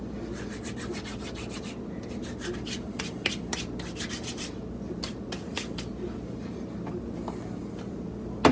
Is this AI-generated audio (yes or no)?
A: no